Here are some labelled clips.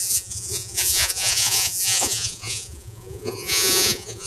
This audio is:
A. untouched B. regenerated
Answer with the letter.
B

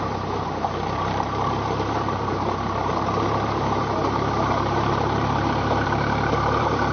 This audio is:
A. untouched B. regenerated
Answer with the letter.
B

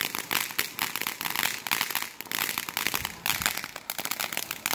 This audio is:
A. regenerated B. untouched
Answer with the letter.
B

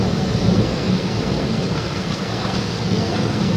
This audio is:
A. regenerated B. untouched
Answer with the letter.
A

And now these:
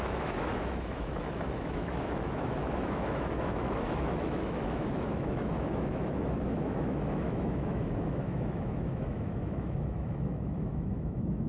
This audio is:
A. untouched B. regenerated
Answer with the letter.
B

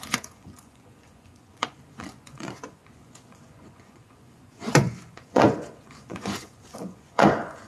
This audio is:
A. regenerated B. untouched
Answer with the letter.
A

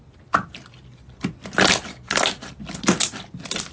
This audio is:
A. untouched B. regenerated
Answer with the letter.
B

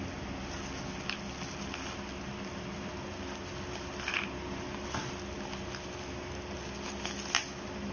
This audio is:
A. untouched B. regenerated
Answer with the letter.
A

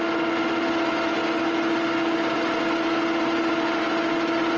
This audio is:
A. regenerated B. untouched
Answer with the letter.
B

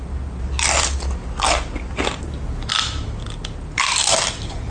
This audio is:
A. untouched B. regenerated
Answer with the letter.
A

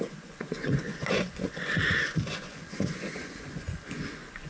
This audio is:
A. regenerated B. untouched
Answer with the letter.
A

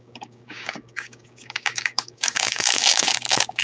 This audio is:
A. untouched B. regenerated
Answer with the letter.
B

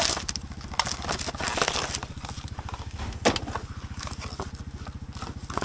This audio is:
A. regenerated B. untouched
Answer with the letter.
B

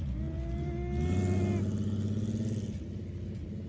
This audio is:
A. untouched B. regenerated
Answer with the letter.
A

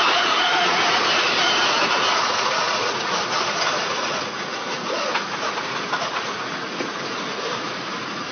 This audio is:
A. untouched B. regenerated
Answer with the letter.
B